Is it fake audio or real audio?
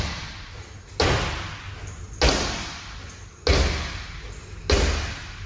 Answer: real